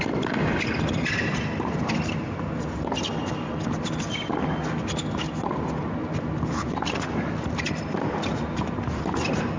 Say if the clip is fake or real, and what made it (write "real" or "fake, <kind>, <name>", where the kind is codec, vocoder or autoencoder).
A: real